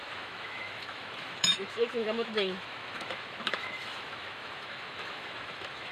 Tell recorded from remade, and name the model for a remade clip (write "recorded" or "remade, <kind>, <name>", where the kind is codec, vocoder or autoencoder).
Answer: remade, autoencoder, DAC-VAE